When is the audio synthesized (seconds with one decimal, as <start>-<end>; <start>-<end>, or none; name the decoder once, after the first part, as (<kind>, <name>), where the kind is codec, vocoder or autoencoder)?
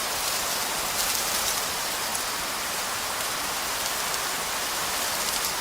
0.0-2.1 (vocoder, BigVGAN v2)